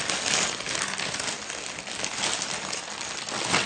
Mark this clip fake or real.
real